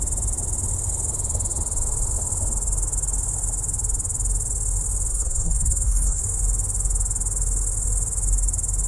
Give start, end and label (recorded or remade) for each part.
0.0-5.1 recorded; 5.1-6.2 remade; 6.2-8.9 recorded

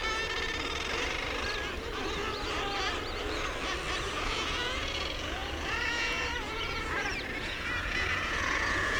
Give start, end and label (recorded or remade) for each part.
0.0-4.0 recorded; 4.0-9.0 remade

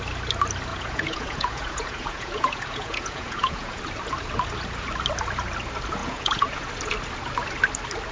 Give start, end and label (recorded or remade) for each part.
0.0-0.7 recorded; 0.7-3.8 remade; 3.8-6.0 recorded; 6.0-6.7 remade; 6.7-8.1 recorded

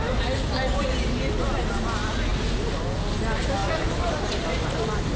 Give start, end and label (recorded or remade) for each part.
0.0-2.3 recorded; 2.3-2.8 remade; 2.8-3.6 recorded; 3.6-5.2 remade